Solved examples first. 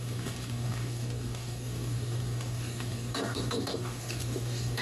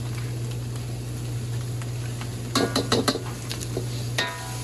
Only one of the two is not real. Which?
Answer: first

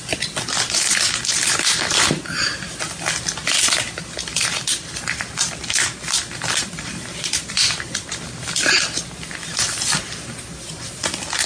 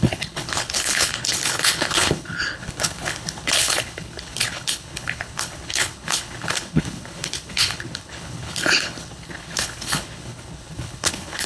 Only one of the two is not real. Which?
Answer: second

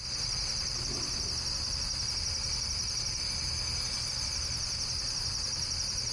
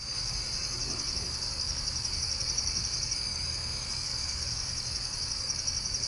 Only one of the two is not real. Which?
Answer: second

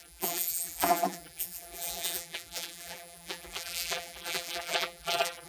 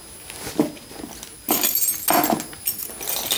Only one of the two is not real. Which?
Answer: first